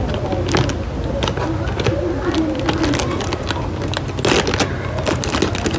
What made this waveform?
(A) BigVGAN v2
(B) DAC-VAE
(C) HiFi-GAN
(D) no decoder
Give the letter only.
D